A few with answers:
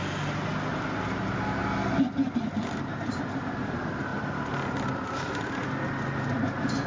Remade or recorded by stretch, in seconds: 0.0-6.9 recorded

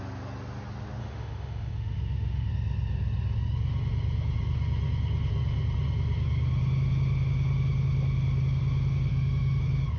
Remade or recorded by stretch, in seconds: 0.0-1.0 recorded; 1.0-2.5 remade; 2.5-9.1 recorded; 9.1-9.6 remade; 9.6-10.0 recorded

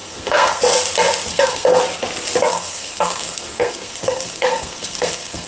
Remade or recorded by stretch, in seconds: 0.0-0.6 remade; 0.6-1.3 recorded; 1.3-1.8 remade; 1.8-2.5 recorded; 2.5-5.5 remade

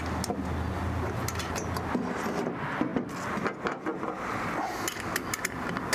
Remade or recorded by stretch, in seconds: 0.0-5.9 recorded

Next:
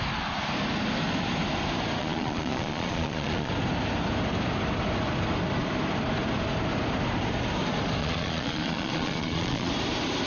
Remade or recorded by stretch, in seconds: 0.0-2.0 recorded; 2.0-3.5 remade; 3.5-8.0 recorded; 8.0-9.7 remade; 9.7-10.3 recorded

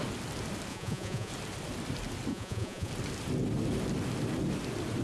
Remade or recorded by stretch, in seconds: 0.0-0.7 recorded; 0.7-1.3 remade; 1.3-2.3 recorded; 2.3-2.9 remade; 2.9-5.0 recorded

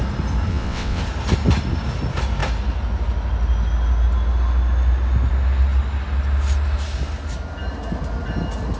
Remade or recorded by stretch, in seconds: 0.0-0.5 recorded; 0.5-1.0 remade; 1.0-8.8 recorded

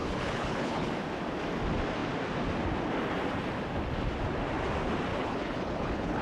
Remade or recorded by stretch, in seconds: 0.0-0.9 remade; 0.9-5.1 recorded; 5.1-6.2 remade